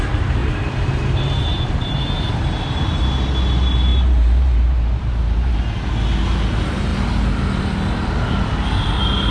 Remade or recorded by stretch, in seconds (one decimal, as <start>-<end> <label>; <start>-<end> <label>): 0.0-0.4 recorded; 0.4-2.4 remade; 2.4-3.9 recorded; 3.9-5.5 remade; 5.5-9.3 recorded